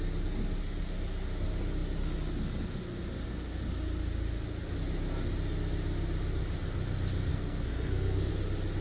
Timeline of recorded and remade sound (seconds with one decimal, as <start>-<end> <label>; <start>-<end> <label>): 0.0-7.3 recorded; 7.3-8.3 remade; 8.3-8.8 recorded